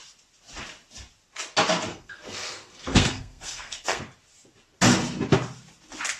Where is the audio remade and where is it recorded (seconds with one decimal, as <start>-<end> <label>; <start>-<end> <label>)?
0.0-1.9 recorded; 1.9-4.0 remade; 4.0-6.2 recorded